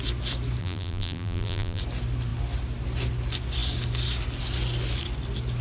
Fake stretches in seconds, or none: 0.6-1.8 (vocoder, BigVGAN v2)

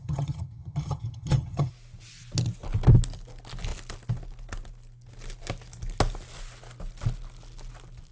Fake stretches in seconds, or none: 0.0-1.7 (vocoder, HiFi-GAN)

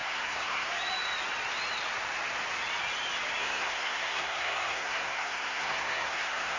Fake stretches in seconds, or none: 0.0-0.7 (codec, SNAC); 3.4-6.6

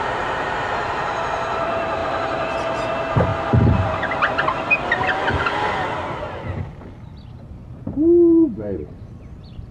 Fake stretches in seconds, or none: 0.0-3.3 (vocoder, BigVGAN v2); 7.3-9.7

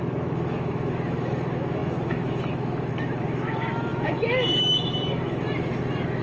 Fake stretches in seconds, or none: 0.0-6.2 (autoencoder, DAC-VAE)

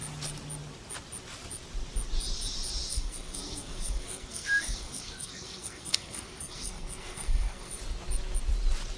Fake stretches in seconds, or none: 2.9-7.8 (codec, SNAC)

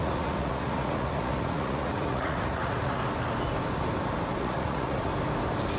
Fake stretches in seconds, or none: 0.0-3.0 (vocoder, Vocos); 4.4-5.1